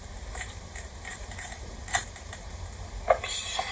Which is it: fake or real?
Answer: fake